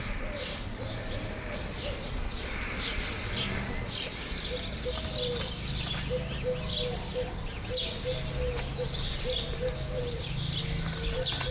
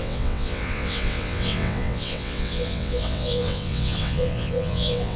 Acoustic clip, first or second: first